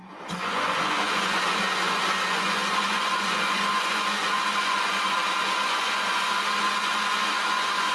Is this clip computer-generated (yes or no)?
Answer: yes